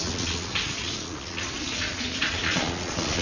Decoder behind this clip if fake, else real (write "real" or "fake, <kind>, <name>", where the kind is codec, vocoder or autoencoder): fake, vocoder, Vocos